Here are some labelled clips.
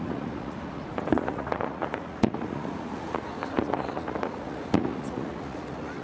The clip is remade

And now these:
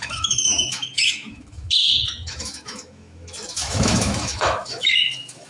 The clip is remade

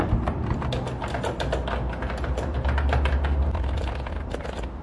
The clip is recorded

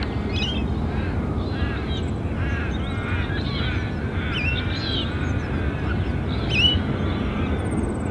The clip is recorded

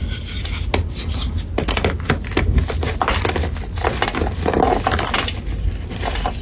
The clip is recorded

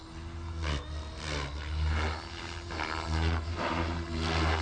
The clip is recorded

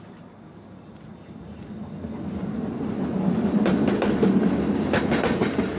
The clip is recorded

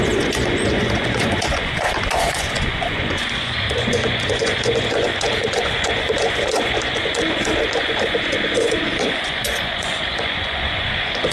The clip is remade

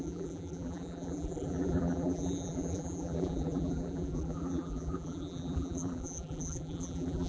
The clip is remade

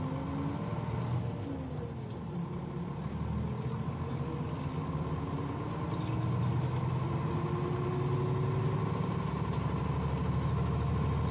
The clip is recorded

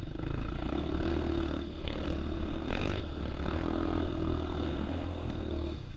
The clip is remade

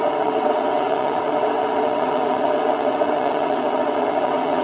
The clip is remade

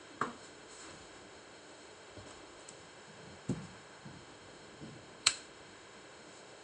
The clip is remade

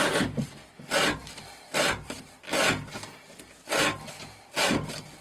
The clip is recorded